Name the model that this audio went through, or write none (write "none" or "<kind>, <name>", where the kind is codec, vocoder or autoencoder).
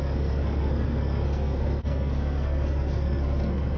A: codec, SNAC